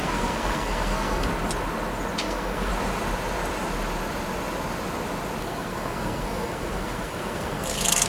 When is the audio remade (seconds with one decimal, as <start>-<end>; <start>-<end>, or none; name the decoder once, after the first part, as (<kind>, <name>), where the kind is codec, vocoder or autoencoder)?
0.0-1.3 (codec, SNAC); 2.2-2.7; 5.4-8.1